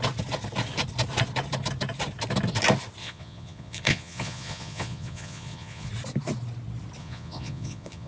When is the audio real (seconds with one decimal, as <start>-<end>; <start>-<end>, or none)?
0.0-3.0; 5.9-7.0